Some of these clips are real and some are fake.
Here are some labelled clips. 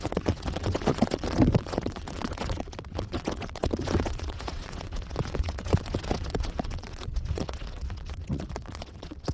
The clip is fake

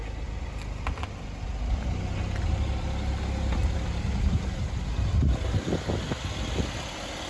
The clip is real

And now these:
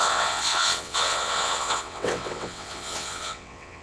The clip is fake